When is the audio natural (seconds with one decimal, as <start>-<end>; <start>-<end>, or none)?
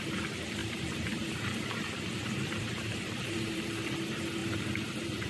0.0-0.6; 3.8-4.4